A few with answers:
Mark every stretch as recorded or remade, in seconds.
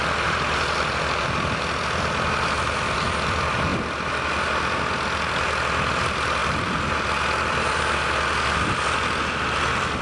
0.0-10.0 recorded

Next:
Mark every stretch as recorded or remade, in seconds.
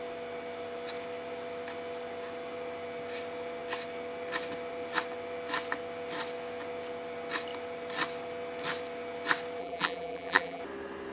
0.0-9.6 recorded; 9.6-10.6 remade; 10.6-11.1 recorded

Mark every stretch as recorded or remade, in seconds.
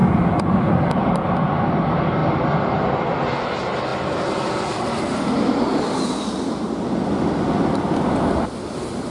0.0-1.1 remade; 1.1-9.1 recorded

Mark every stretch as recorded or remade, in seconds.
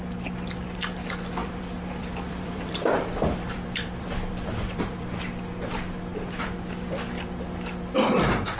0.0-1.4 recorded; 1.4-5.2 remade; 5.2-8.6 recorded